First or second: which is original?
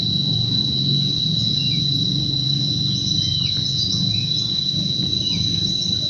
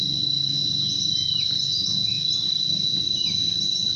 second